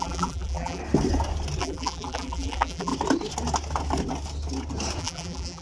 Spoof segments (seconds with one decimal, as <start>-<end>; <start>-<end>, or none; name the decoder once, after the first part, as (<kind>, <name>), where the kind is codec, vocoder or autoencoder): 0.0-0.8 (vocoder, BigVGAN v2); 1.6-2.9; 5.0-5.6

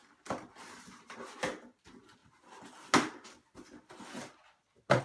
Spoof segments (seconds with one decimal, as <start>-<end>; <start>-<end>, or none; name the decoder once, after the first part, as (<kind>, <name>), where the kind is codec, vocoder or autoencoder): none